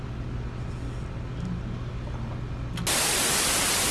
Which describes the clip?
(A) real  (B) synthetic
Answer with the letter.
A